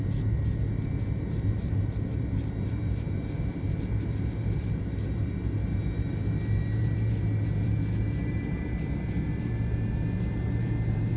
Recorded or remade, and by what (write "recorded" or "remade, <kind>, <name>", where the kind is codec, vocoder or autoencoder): remade, vocoder, BigVGAN v2